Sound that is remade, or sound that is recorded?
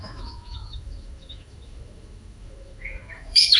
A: remade